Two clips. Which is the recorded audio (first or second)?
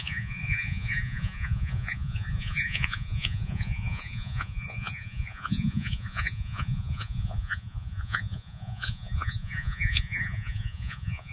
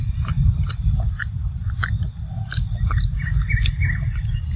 second